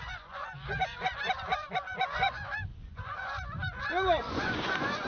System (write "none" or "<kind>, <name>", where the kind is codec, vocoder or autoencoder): vocoder, Vocos